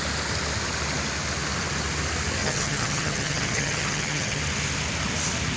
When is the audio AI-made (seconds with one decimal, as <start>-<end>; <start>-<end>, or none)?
2.4-4.4